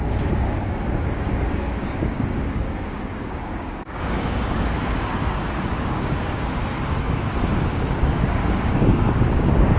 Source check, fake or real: fake